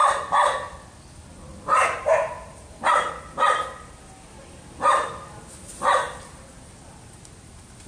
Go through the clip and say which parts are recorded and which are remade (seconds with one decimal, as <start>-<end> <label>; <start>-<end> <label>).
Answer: 0.0-7.9 recorded